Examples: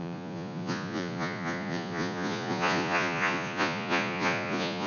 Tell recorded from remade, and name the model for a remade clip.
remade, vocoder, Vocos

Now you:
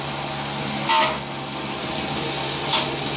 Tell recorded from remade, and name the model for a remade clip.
recorded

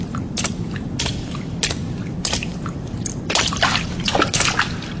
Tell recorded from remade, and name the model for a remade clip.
recorded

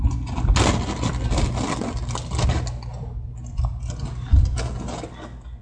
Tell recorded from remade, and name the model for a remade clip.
recorded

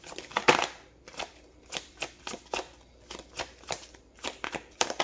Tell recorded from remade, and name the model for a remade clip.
remade, vocoder, BigVGAN v2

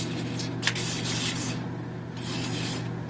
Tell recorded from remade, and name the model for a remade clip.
recorded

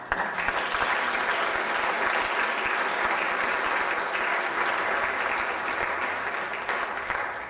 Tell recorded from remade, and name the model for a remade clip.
recorded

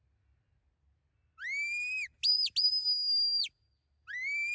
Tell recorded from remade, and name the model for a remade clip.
recorded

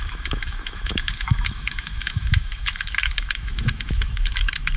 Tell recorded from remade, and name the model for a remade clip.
remade, autoencoder, DAC-VAE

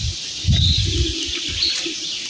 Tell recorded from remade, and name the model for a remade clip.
recorded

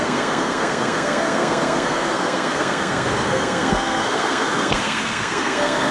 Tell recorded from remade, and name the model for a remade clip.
remade, codec, SNAC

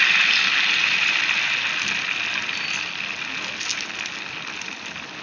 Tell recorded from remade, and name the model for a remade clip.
recorded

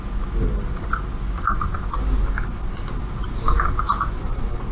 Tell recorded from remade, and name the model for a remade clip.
recorded